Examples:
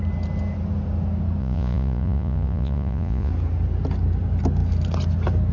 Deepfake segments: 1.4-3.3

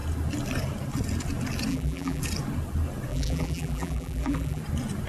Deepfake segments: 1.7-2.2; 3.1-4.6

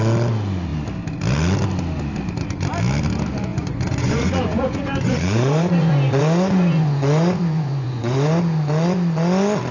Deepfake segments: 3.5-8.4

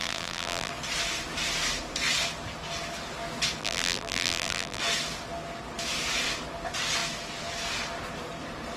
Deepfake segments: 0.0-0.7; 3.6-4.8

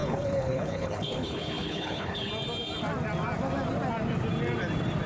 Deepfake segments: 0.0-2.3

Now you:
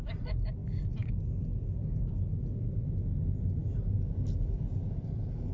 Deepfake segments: none

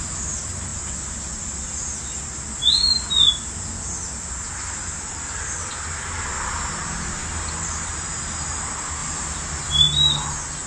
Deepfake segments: none